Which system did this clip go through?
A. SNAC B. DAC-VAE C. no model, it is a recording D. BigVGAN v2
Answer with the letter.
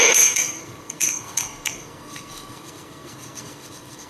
A